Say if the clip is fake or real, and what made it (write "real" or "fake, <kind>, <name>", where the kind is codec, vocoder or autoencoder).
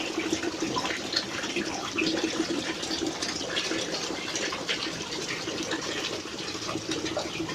real